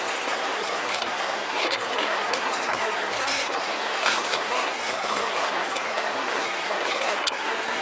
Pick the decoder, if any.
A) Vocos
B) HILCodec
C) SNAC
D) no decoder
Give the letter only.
C